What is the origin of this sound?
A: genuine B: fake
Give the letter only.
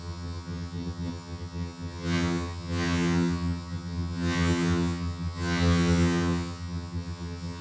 B